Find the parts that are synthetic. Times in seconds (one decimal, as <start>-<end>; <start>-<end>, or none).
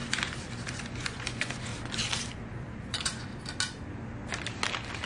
0.7-1.7; 2.8-3.3